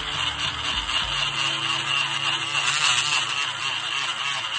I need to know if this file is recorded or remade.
recorded